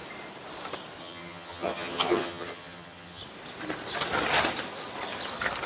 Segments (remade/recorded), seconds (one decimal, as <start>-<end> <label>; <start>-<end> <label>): 0.0-1.0 recorded; 1.0-3.2 remade; 3.2-5.7 recorded